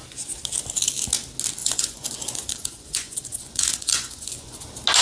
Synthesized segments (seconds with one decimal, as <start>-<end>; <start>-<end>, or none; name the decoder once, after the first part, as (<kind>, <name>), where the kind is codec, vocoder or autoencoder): 1.6-4.6 (vocoder, Vocos)